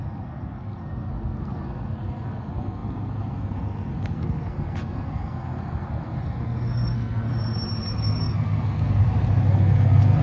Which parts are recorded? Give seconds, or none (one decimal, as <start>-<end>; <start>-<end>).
7.3-8.2; 9.0-9.5